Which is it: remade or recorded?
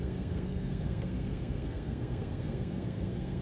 remade